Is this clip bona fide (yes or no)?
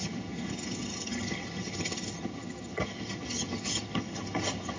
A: no